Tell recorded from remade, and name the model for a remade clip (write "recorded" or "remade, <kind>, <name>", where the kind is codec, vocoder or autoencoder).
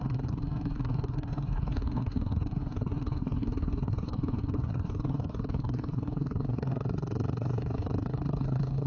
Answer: remade, codec, SNAC